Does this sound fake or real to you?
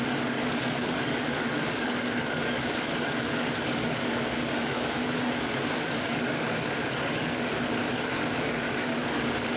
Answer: fake